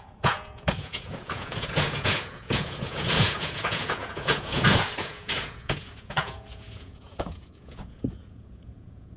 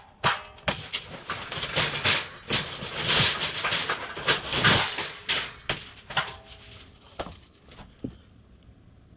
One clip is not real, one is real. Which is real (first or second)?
second